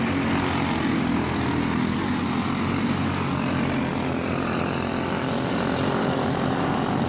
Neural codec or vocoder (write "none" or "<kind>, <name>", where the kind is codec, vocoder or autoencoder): none